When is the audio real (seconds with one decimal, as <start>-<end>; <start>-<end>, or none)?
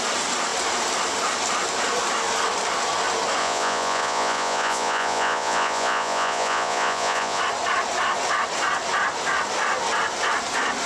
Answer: 0.0-3.4; 7.4-10.9